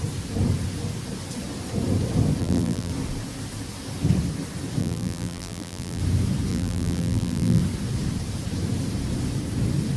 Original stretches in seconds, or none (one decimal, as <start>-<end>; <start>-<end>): 0.0-2.4; 2.9-4.8; 6.0-6.5; 7.6-10.0